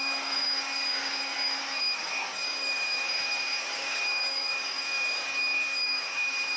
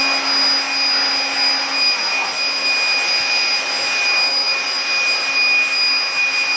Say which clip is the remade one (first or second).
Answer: first